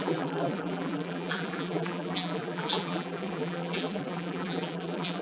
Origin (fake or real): fake